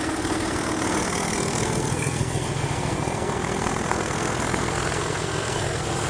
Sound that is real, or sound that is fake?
fake